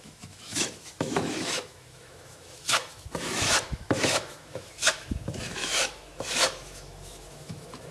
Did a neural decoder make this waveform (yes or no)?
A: yes